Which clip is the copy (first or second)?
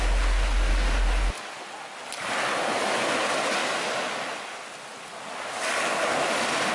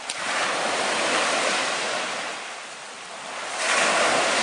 second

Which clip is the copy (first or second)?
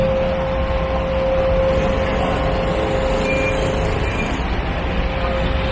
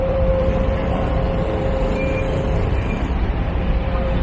second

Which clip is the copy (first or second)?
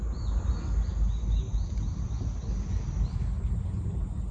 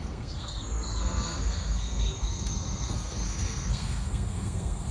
second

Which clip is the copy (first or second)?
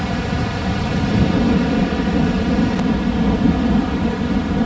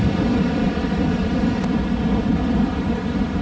second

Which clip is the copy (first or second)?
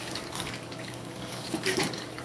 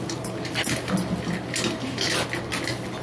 first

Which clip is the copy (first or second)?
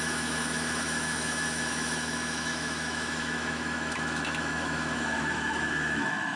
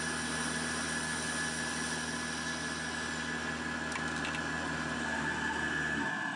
first